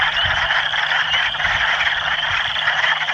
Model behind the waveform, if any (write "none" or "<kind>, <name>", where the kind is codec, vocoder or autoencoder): none